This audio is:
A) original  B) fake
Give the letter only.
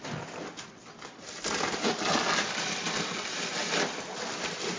A